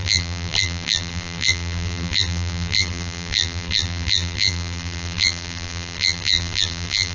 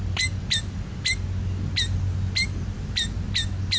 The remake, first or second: first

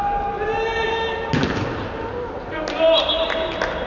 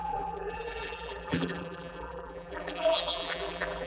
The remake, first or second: second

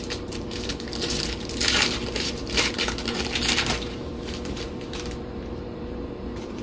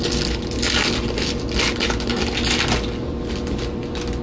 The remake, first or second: first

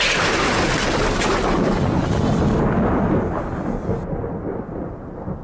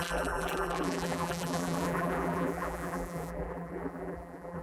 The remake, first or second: second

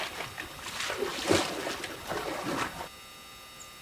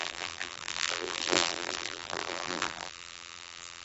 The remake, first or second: second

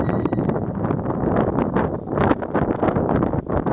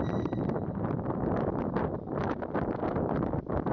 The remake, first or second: second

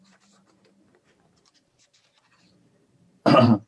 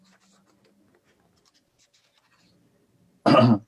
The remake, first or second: first